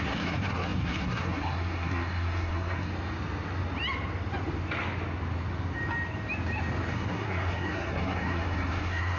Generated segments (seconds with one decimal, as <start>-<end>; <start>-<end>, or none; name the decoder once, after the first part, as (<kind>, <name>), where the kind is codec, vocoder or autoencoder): 0.0-2.9 (codec, SNAC); 6.9-9.2